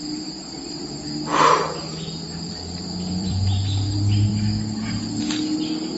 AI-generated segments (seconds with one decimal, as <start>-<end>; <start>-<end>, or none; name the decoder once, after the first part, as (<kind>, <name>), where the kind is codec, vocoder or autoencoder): 1.3-3.5 (vocoder, BigVGAN v2)